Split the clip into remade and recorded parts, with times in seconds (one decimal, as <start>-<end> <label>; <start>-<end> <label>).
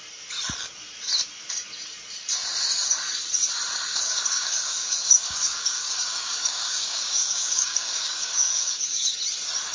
0.0-3.9 recorded; 3.9-9.1 remade; 9.1-9.7 recorded